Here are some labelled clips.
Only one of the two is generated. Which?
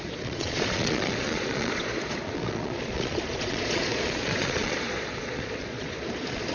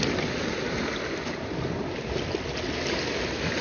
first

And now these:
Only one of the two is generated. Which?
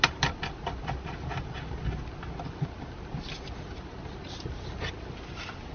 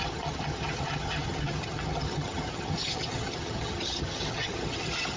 second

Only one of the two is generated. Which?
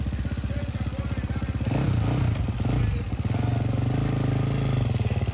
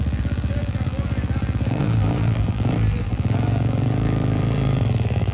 second